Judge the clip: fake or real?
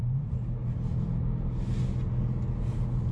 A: real